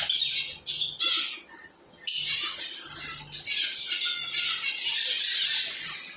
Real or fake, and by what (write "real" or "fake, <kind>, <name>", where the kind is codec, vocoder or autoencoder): real